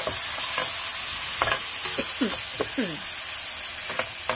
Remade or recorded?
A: recorded